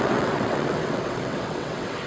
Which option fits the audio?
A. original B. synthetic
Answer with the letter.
B